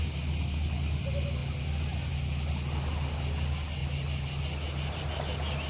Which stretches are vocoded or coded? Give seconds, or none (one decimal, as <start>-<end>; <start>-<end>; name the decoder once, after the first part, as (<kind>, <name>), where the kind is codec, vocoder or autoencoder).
none